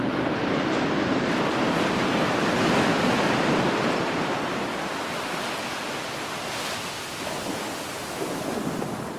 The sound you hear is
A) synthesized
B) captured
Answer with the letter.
B